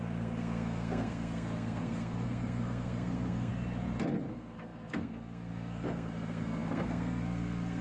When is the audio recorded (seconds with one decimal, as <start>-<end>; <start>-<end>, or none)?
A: 3.5-4.3